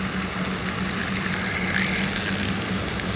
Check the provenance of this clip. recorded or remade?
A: recorded